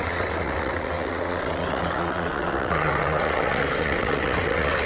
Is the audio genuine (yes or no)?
no